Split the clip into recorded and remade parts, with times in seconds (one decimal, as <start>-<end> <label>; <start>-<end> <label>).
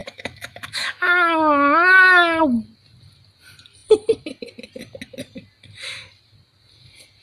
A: 0.0-2.4 remade; 2.4-7.2 recorded